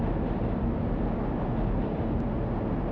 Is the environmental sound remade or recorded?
recorded